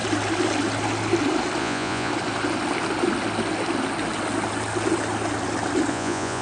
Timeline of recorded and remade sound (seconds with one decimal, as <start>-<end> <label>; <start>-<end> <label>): 0.0-1.6 recorded; 1.6-2.1 remade; 2.1-5.9 recorded; 5.9-6.4 remade